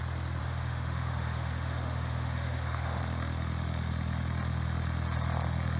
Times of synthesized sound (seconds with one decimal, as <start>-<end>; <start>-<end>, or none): 0.4-3.0